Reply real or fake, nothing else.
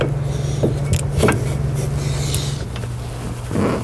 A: real